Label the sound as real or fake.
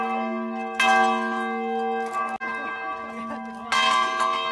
real